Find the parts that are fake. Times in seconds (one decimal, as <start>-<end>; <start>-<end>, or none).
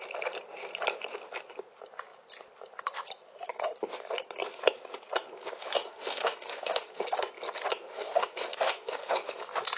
5.6-6.9; 7.9-9.4